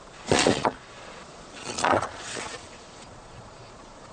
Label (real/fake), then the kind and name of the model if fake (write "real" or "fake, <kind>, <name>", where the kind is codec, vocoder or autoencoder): fake, vocoder, Vocos